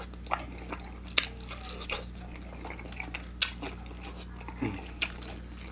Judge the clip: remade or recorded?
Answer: recorded